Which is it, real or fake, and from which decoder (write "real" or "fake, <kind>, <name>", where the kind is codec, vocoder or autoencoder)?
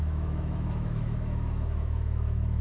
fake, autoencoder, DAC-VAE